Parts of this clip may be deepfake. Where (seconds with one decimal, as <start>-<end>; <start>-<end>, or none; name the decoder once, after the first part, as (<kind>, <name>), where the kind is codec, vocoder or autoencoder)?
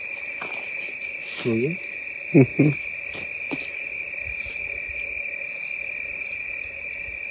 none